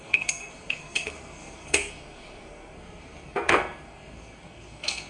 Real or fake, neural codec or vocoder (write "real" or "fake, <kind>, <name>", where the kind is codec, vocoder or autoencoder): fake, codec, SNAC